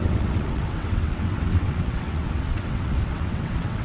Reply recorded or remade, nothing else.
remade